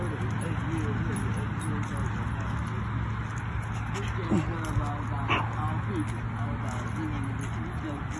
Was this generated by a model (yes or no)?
no